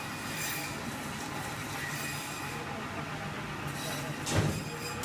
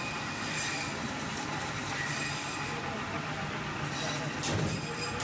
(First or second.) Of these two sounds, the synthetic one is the second